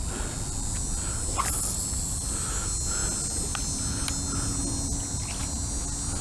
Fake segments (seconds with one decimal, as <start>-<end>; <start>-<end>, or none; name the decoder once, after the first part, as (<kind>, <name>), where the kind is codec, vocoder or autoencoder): none